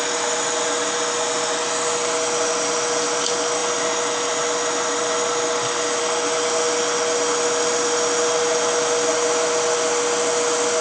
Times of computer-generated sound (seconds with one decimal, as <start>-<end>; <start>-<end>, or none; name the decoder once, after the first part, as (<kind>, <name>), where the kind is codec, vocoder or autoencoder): none